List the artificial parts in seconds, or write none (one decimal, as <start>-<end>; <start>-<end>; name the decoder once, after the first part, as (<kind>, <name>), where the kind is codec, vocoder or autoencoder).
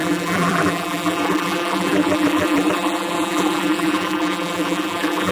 0.0-5.3 (vocoder, BigVGAN v2)